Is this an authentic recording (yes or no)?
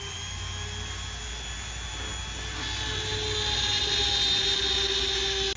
yes